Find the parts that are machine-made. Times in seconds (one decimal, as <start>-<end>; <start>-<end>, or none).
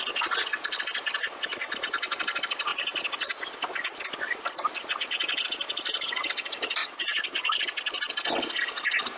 none